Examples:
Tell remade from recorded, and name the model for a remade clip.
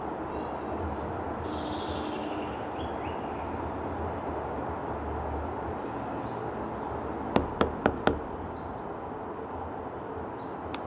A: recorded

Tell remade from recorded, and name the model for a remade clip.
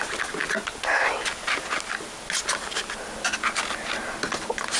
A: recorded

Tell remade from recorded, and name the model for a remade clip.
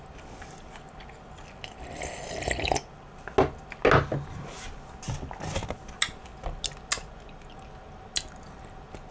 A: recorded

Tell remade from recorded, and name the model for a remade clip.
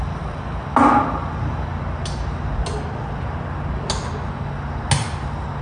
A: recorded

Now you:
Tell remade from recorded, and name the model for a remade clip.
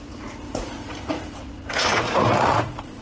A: remade, vocoder, Vocos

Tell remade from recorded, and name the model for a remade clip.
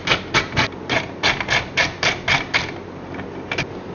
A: recorded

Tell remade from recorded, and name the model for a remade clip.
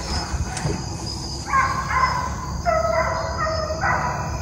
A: recorded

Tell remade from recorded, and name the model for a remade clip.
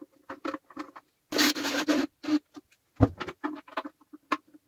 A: recorded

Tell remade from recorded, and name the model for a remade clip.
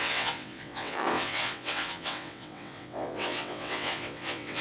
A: remade, vocoder, WaveNeXt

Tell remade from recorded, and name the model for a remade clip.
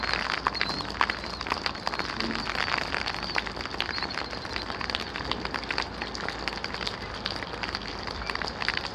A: recorded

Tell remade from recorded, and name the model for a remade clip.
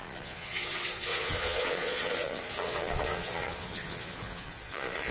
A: remade, vocoder, Vocos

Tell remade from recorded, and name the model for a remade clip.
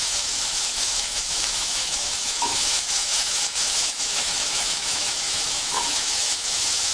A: remade, autoencoder, DAC-VAE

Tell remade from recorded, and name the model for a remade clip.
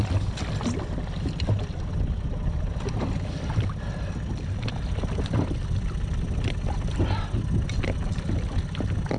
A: recorded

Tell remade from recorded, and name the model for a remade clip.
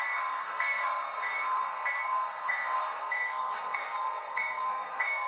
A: remade, codec, SNAC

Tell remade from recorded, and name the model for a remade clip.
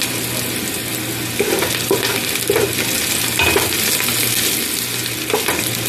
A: recorded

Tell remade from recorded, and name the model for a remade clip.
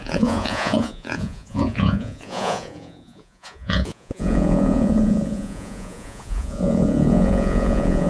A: remade, vocoder, Vocos